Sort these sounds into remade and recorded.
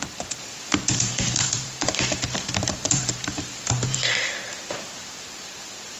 remade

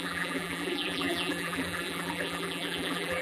remade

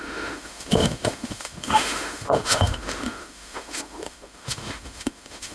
remade